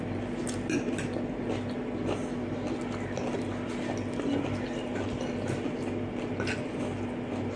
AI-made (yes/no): no